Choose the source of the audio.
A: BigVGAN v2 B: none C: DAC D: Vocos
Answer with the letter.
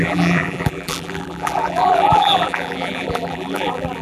A